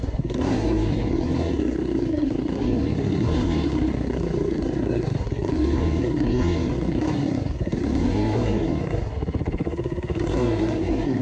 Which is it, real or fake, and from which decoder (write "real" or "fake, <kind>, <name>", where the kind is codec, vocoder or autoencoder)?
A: fake, codec, SNAC